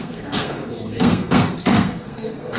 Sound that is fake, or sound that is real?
fake